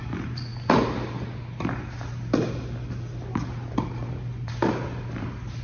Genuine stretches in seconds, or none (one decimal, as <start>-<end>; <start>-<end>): 0.5-3.9